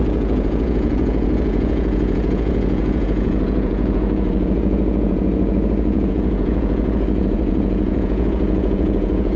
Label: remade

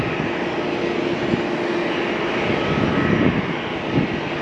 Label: recorded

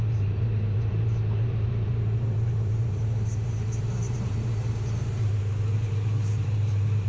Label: remade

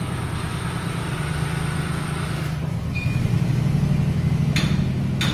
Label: recorded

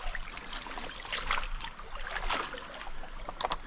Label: recorded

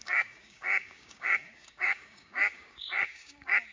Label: remade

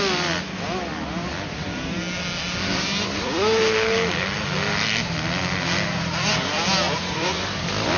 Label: recorded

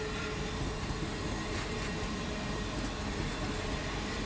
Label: recorded